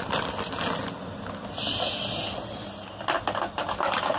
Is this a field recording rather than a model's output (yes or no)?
yes